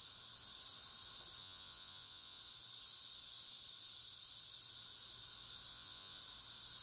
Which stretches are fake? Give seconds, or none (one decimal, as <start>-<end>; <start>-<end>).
1.4-2.4; 5.7-6.2